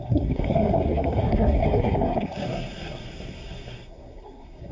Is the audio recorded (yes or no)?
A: no